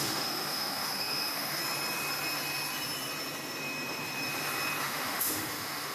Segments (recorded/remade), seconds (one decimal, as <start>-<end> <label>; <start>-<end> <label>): 0.0-1.6 remade; 1.6-4.8 recorded; 4.8-5.9 remade

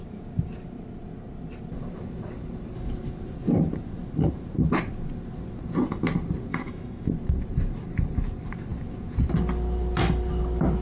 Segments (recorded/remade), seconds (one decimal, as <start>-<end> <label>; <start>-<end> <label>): 0.0-6.5 recorded; 6.5-7.1 remade; 7.1-10.8 recorded

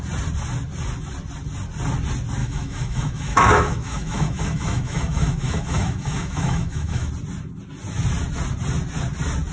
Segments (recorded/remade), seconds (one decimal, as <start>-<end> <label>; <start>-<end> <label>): 0.0-2.4 recorded; 2.4-7.1 remade; 7.1-9.5 recorded

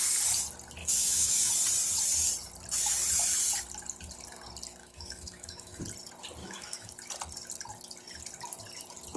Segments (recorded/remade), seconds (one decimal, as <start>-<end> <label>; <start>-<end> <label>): 0.0-0.8 recorded; 0.8-1.5 remade; 1.5-4.8 recorded; 4.8-5.8 remade; 5.8-6.4 recorded; 6.4-6.9 remade; 6.9-9.2 recorded

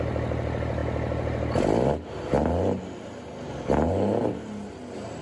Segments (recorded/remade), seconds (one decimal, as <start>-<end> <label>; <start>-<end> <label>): 0.0-5.2 recorded